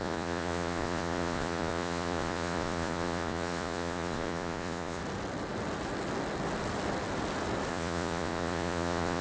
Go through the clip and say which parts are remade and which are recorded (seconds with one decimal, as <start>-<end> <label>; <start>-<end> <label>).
0.0-5.0 remade; 5.0-7.7 recorded; 7.7-9.2 remade